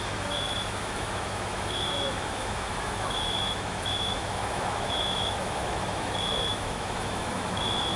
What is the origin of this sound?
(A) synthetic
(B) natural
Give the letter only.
A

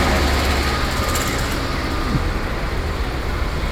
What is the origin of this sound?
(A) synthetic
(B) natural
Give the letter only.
B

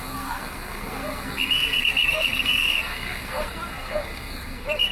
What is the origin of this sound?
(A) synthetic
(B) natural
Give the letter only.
A